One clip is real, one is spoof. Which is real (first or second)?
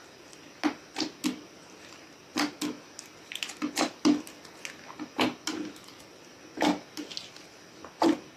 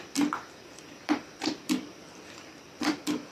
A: first